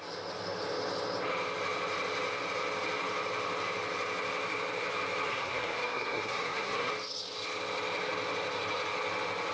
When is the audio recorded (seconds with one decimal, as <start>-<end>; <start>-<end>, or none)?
0.0-5.3; 6.9-9.5